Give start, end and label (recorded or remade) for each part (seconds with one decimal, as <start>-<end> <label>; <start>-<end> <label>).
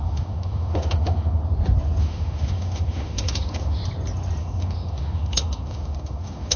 0.0-1.4 remade; 1.4-2.0 recorded; 2.0-3.8 remade; 3.8-4.4 recorded; 4.4-6.6 remade